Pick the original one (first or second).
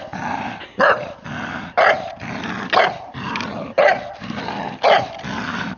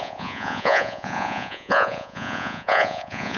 first